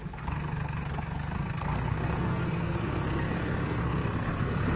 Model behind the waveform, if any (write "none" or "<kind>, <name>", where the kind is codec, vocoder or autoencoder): codec, SNAC